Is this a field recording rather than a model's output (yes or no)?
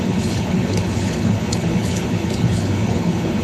no